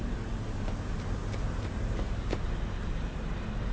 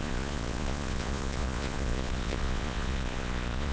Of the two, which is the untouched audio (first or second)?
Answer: first